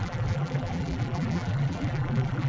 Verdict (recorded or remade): remade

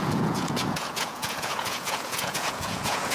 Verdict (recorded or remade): remade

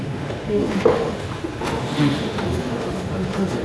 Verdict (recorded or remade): remade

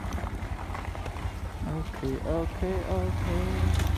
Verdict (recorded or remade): recorded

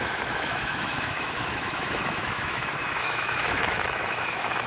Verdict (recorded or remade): remade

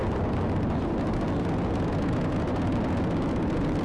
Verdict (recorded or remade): recorded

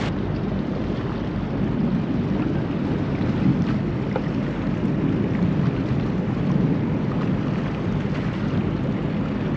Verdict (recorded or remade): recorded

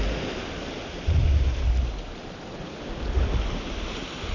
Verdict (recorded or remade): recorded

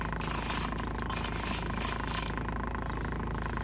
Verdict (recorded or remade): recorded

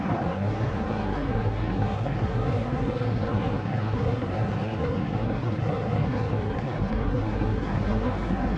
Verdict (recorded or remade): remade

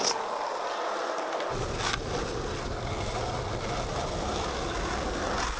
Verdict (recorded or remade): recorded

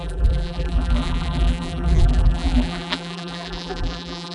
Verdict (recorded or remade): remade